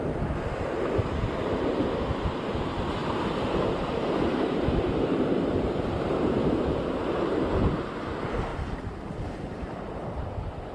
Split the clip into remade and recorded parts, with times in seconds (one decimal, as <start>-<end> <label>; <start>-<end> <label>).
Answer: 0.0-3.0 recorded; 3.0-6.6 remade; 6.6-8.5 recorded; 8.5-10.2 remade; 10.2-10.7 recorded